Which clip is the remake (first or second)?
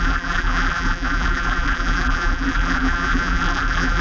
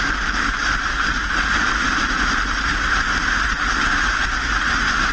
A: first